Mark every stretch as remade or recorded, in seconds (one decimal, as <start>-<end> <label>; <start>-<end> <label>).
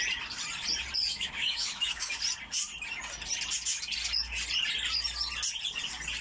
0.0-1.1 recorded; 1.1-2.1 remade; 2.1-6.2 recorded